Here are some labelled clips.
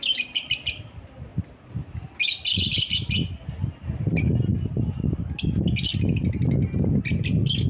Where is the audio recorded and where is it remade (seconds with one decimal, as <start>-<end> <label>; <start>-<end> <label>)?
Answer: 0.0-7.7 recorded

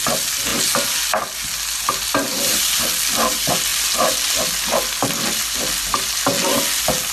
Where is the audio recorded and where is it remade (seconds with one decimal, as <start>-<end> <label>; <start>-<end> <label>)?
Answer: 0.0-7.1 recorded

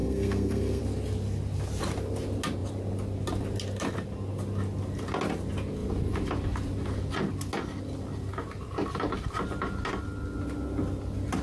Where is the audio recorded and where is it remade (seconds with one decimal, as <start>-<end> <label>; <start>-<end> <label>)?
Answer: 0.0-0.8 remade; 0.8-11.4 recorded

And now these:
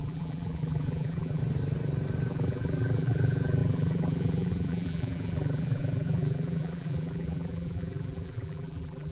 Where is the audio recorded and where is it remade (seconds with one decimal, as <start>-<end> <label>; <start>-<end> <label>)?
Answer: 0.0-1.4 remade; 1.4-2.3 recorded; 2.3-9.1 remade

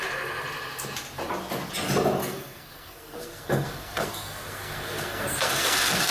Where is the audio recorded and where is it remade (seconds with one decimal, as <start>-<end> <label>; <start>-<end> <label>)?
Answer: 0.0-2.2 recorded; 2.2-6.1 remade